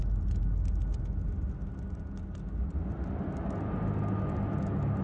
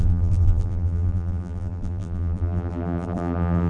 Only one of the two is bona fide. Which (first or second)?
first